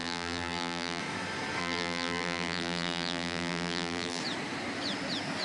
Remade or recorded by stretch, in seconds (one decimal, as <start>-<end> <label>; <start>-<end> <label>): 0.0-1.0 remade; 1.0-1.6 recorded; 1.6-4.2 remade; 4.2-5.4 recorded